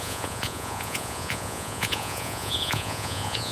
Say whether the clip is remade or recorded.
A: remade